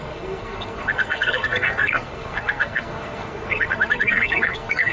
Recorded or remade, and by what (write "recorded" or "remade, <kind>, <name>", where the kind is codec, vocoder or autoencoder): remade, codec, SNAC